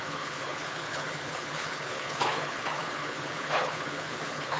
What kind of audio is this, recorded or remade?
remade